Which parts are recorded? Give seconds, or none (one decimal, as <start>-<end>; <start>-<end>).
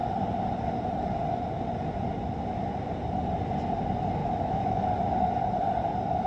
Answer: 0.0-4.2; 4.9-6.3